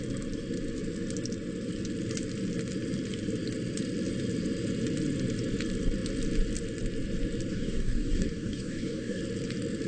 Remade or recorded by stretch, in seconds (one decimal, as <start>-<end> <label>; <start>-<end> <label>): 0.0-7.5 recorded; 7.5-9.2 remade; 9.2-9.9 recorded